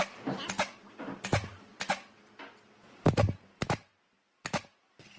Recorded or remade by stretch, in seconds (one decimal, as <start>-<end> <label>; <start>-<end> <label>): 0.0-5.2 recorded